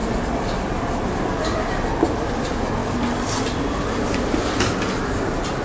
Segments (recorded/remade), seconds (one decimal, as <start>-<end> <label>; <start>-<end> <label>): 0.0-5.6 recorded

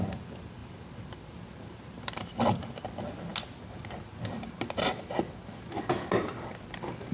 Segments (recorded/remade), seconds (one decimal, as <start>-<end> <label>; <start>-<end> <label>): 0.0-0.6 recorded; 0.6-2.7 remade; 2.7-7.1 recorded